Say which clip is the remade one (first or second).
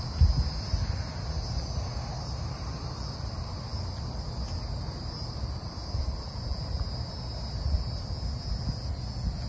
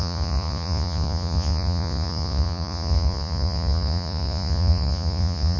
second